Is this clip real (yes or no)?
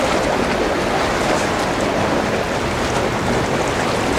yes